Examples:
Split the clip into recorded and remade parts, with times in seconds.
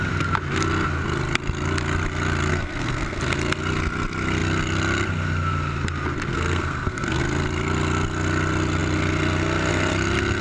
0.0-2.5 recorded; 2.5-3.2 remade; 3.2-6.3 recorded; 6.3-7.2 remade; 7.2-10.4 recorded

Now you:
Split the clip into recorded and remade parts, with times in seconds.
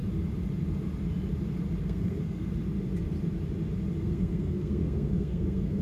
0.0-1.8 recorded; 1.8-2.5 remade; 2.5-4.0 recorded; 4.0-5.8 remade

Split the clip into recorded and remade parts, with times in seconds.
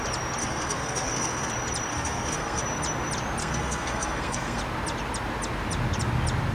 0.0-0.4 recorded; 0.4-1.5 remade; 1.5-1.9 recorded; 1.9-2.6 remade; 2.6-3.4 recorded; 3.4-4.6 remade; 4.6-6.5 recorded